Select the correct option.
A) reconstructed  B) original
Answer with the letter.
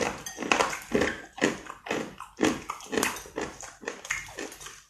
B